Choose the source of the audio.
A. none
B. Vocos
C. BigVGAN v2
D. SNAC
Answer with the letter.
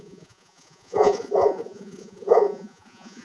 B